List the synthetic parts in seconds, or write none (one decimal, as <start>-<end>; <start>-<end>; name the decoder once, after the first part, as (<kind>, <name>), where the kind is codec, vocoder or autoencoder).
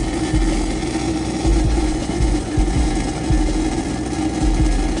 1.5-2.9 (vocoder, Vocos)